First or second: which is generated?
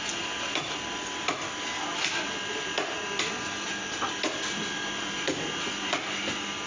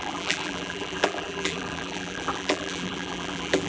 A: second